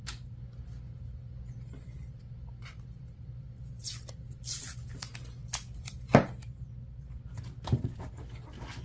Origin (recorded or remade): recorded